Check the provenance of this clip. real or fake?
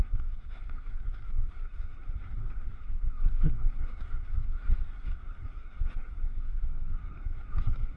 fake